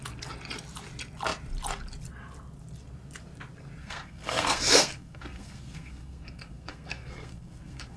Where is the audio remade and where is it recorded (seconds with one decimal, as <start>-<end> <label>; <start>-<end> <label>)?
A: 0.0-3.8 recorded; 3.8-8.0 remade